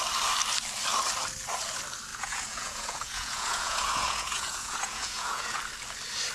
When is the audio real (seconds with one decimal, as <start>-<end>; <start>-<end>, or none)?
0.0-2.1; 5.6-6.3